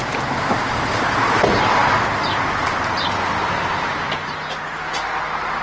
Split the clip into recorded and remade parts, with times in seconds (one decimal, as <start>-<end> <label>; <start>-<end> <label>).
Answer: 0.0-5.6 recorded